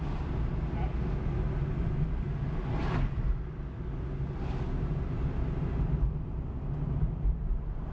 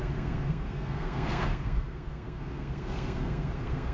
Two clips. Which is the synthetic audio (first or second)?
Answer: second